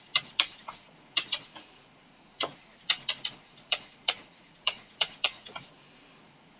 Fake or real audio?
fake